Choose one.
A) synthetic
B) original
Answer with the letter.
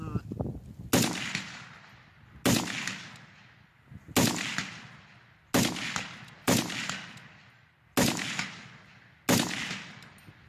B